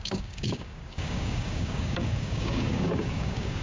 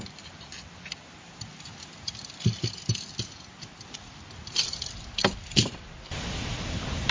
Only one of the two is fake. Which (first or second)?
first